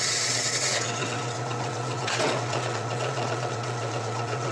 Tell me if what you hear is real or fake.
fake